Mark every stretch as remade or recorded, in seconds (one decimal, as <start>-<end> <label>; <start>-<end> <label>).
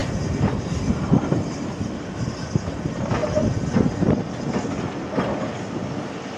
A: 0.0-6.4 recorded